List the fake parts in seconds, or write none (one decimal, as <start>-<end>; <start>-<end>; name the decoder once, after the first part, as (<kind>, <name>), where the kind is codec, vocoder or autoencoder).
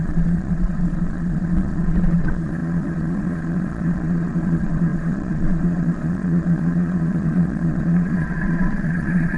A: 0.0-9.4 (vocoder, Vocos)